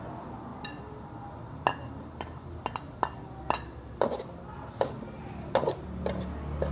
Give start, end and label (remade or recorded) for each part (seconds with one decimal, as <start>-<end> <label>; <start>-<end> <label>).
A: 0.0-6.7 recorded